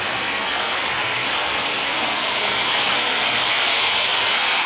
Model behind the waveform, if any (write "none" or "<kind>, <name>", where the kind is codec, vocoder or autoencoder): codec, SNAC